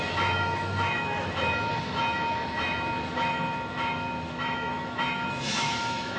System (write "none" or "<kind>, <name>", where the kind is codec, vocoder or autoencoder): autoencoder, DAC-VAE